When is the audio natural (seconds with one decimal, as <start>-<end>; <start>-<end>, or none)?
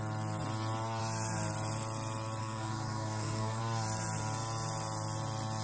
0.0-2.4; 3.6-5.6